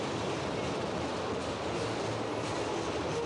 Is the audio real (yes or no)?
yes